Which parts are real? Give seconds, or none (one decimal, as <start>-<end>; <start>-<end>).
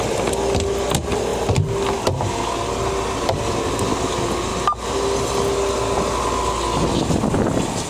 0.0-7.9